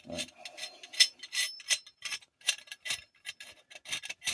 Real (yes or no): yes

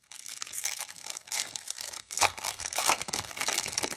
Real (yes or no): no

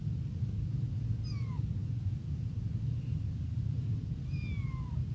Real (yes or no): yes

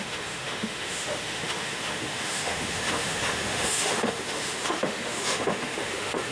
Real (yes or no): no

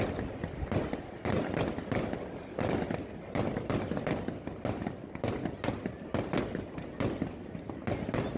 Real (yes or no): yes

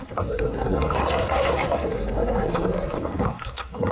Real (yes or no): no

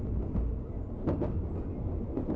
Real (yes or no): yes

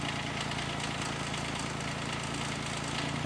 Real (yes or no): yes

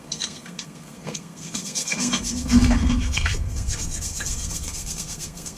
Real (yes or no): no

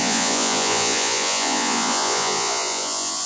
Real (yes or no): no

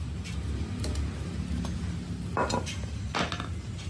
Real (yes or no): yes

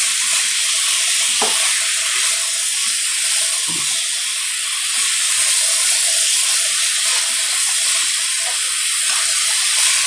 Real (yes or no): yes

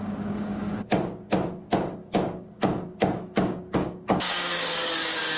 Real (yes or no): no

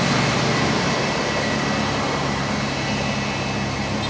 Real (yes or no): yes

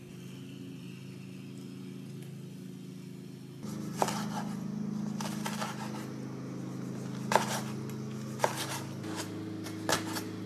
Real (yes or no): yes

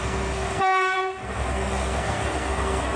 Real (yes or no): no